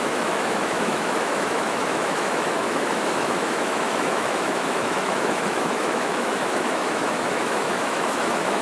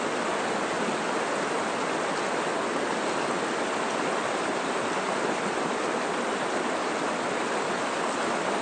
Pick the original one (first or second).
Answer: second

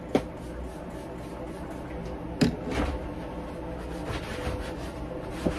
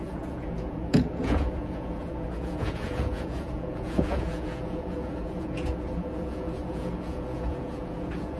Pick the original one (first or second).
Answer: first